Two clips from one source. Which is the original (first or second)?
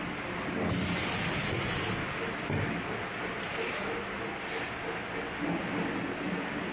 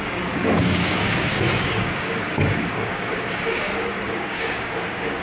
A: first